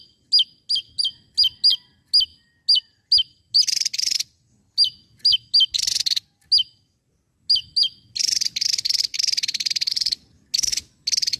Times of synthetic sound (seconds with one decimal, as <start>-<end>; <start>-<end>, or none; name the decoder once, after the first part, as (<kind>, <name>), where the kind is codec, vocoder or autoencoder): none